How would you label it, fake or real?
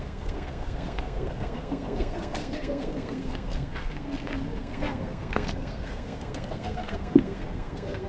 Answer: fake